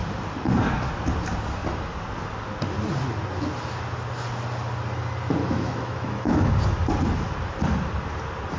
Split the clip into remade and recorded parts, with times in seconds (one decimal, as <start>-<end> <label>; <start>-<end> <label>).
0.0-5.4 recorded; 5.4-6.5 remade; 6.5-8.6 recorded